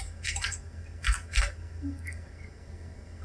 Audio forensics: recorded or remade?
remade